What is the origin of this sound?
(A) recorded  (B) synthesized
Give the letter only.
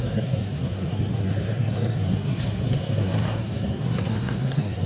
B